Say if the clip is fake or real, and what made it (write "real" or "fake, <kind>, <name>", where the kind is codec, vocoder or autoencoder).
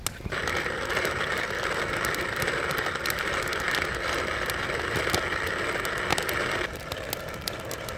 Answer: real